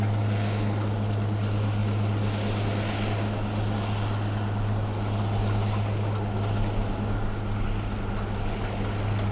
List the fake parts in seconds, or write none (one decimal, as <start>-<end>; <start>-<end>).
none